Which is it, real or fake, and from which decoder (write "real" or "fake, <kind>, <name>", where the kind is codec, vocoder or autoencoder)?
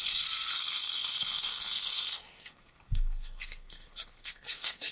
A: fake, codec, SNAC